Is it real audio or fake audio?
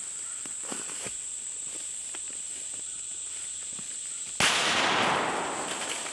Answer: real